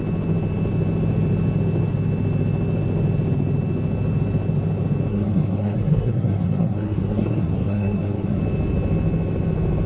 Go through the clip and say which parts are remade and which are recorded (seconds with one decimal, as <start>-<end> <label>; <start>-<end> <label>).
0.0-5.1 recorded; 5.1-8.4 remade; 8.4-9.9 recorded